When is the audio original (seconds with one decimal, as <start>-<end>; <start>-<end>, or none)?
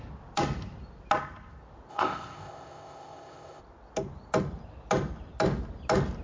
0.0-1.9; 3.6-6.2